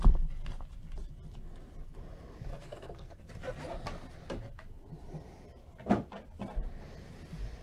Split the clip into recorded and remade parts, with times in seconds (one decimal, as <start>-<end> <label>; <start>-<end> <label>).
0.0-2.5 recorded; 2.5-3.2 remade; 3.2-7.6 recorded